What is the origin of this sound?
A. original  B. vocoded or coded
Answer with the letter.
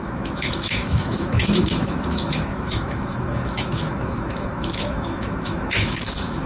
B